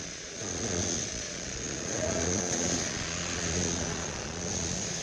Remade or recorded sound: remade